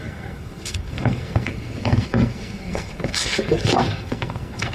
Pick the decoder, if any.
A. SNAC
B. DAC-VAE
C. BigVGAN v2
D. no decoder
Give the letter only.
A